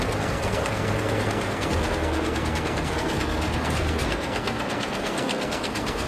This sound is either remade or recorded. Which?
remade